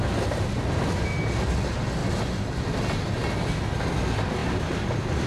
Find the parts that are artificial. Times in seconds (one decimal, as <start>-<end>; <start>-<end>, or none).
none